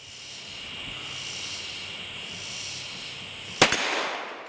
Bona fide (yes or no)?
yes